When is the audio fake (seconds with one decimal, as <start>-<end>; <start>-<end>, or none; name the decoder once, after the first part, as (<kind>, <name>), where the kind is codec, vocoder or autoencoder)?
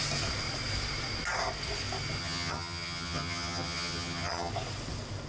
2.2-4.5 (vocoder, HiFi-GAN)